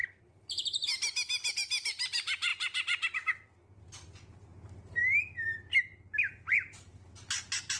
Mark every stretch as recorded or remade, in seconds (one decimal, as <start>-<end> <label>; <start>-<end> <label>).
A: 0.0-0.9 remade; 0.9-7.8 recorded